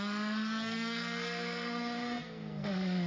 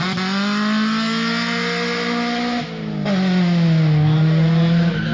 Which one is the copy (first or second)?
first